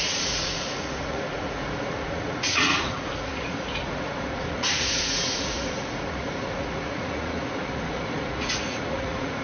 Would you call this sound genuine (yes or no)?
no